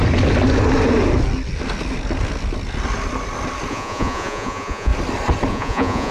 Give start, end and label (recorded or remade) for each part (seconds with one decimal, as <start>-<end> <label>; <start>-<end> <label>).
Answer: 0.0-3.7 recorded; 3.7-4.9 remade; 4.9-5.5 recorded; 5.5-6.1 remade